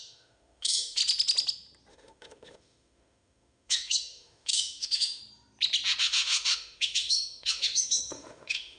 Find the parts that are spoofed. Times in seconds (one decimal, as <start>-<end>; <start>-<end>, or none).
0.0-1.0; 1.9-5.2; 6.0-8.8

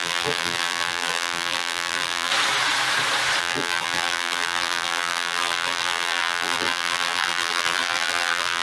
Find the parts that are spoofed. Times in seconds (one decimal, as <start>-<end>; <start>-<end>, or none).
0.0-2.3; 3.4-8.6

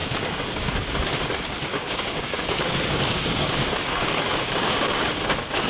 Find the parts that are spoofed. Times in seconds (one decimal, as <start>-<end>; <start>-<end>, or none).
0.0-0.7; 1.7-5.1

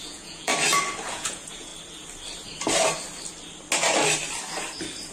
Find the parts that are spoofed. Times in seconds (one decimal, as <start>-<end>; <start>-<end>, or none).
0.0-0.5; 1.1-1.7

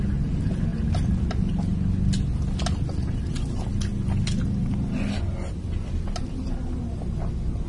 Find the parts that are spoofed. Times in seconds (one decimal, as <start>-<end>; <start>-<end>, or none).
none

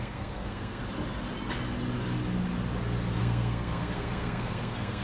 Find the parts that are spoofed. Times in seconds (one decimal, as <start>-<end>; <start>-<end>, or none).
0.0-0.8; 3.2-5.0

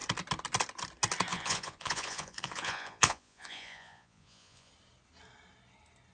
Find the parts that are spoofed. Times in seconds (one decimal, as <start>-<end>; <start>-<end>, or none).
1.3-4.7